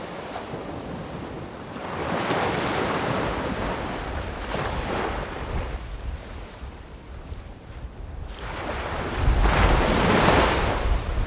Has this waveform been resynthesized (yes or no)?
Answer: yes